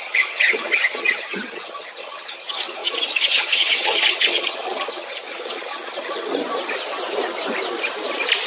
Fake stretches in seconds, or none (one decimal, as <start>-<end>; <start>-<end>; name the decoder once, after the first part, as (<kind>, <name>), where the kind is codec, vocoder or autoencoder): 0.0-6.4 (vocoder, HiFi-GAN)